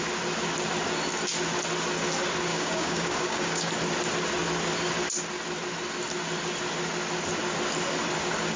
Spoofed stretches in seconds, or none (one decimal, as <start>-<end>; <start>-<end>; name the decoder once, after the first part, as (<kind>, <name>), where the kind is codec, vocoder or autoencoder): 2.5-3.7 (codec, DAC)